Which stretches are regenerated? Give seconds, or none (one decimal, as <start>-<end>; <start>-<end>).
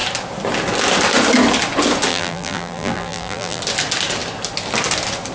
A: 2.1-3.6